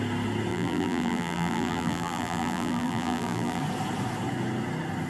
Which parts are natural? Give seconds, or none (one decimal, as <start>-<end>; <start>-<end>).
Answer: 0.0-0.5; 3.6-5.1